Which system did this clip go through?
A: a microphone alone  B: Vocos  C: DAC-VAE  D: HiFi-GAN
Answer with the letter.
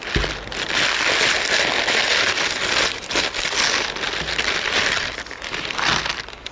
A